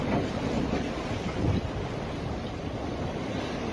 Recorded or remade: recorded